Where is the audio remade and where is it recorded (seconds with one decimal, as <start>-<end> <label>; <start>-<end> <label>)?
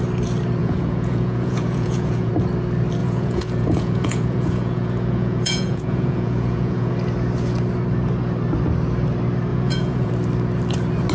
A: 0.0-0.6 recorded; 0.6-2.3 remade; 2.3-3.0 recorded; 3.0-6.9 remade; 6.9-9.5 recorded; 9.5-10.1 remade; 10.1-11.1 recorded